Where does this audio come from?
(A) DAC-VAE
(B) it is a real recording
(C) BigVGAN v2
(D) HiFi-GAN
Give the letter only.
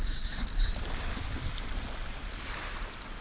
B